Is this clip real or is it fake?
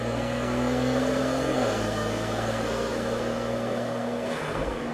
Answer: fake